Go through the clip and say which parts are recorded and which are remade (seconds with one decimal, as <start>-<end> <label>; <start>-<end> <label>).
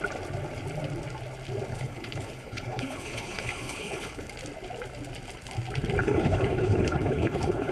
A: 0.0-1.7 recorded; 1.7-4.3 remade; 4.3-6.0 recorded; 6.0-7.7 remade